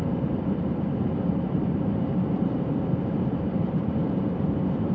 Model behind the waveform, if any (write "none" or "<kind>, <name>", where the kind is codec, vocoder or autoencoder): vocoder, BigVGAN v2